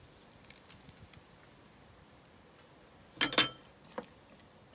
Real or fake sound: real